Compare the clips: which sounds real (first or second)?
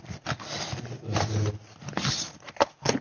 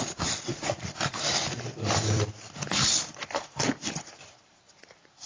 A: first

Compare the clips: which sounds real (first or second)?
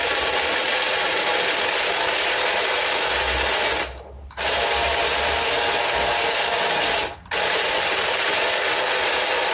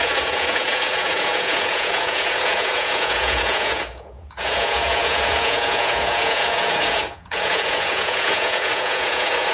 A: first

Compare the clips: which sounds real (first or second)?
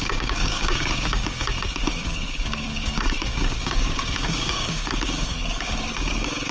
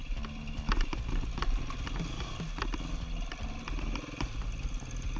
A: second